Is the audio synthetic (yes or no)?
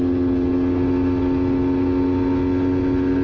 no